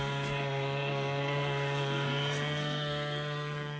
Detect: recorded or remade remade